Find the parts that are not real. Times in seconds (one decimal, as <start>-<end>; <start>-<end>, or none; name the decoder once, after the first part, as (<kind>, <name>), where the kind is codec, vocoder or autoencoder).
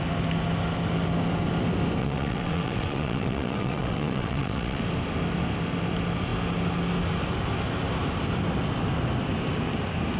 2.0-4.8 (vocoder, WaveNeXt)